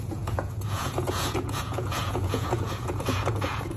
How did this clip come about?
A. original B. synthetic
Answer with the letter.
B